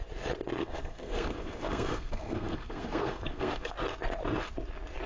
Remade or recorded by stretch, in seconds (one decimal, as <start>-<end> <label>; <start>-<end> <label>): 0.0-0.6 recorded; 0.6-3.7 remade; 3.7-5.1 recorded